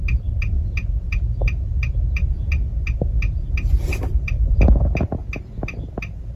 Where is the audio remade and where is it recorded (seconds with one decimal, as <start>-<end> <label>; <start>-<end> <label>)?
0.0-6.4 recorded